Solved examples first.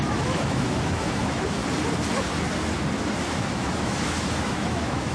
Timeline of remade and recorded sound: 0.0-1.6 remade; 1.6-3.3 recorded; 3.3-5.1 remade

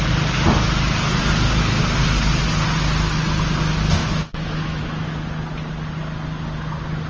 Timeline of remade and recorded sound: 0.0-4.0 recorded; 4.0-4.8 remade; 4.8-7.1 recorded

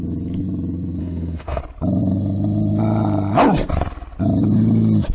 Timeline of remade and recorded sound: 0.0-1.0 recorded; 1.0-1.6 remade; 1.6-5.1 recorded

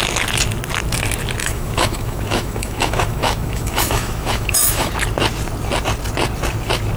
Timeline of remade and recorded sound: 0.0-1.4 recorded; 1.4-4.9 remade; 4.9-7.0 recorded

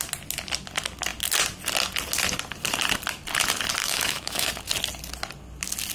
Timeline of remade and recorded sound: 0.0-3.8 recorded; 3.8-4.5 remade; 4.5-5.9 recorded